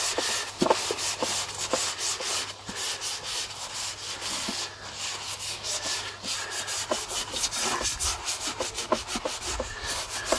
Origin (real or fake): real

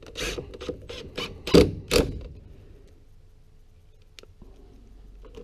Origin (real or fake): real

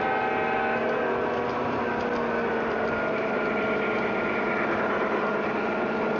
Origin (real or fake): real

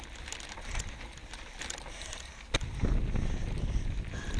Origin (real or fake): real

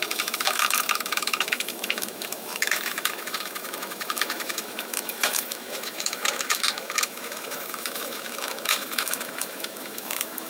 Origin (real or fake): fake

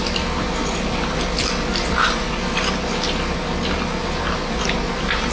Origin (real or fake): real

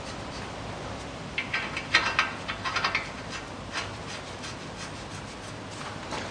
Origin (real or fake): real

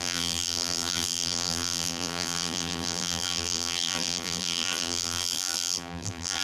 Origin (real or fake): fake